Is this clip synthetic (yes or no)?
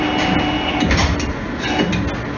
no